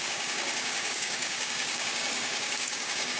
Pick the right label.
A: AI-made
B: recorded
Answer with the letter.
A